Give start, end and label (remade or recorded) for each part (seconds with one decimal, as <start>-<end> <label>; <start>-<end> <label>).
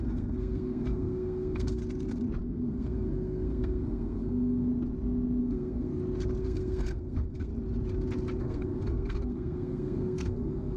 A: 0.0-1.8 remade; 1.8-2.4 recorded; 2.4-4.7 remade; 4.7-5.4 recorded; 5.4-5.9 remade; 5.9-6.4 recorded; 6.4-7.5 remade; 7.5-8.4 recorded; 8.4-10.8 remade